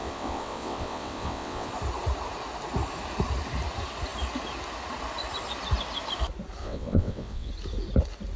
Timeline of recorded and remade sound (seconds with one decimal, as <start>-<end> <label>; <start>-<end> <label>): 0.0-1.7 remade; 1.7-6.6 recorded; 6.6-7.5 remade; 7.5-8.4 recorded